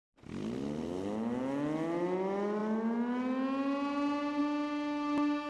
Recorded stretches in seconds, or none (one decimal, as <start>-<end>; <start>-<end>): 0.0-5.5